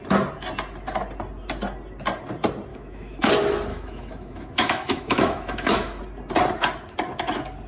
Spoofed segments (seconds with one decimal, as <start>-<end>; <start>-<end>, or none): 2.7-3.3; 3.7-6.0